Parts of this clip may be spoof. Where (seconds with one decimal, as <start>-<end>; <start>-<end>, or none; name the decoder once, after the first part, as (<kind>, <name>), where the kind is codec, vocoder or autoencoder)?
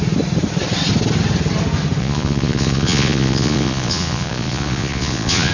2.0-5.5 (vocoder, Vocos)